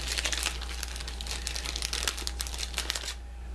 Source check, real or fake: real